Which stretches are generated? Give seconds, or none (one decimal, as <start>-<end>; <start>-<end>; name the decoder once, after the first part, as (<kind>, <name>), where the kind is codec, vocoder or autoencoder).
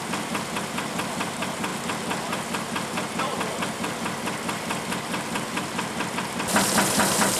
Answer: none